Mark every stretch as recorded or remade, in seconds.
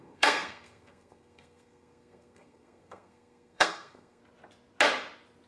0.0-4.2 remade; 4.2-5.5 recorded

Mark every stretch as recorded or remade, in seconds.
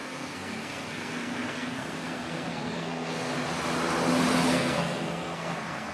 0.0-3.3 remade; 3.3-4.5 recorded; 4.5-5.9 remade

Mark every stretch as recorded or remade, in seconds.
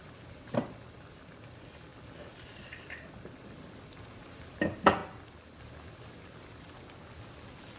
0.0-7.8 recorded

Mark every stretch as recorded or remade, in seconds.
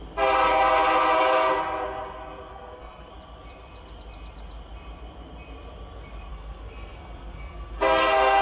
0.0-2.5 recorded; 2.5-3.1 remade; 3.1-6.3 recorded; 6.3-8.4 remade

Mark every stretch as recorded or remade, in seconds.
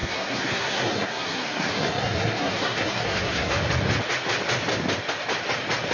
0.0-3.5 remade; 3.5-5.9 recorded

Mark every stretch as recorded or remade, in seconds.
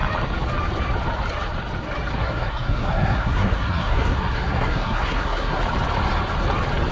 0.0-2.2 recorded; 2.2-5.6 remade; 5.6-6.9 recorded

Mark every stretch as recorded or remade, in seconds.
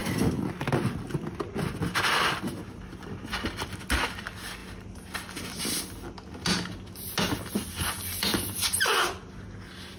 0.0-10.0 recorded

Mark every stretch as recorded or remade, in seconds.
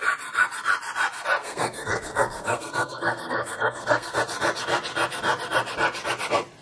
0.0-1.4 recorded; 1.4-4.2 remade; 4.2-6.6 recorded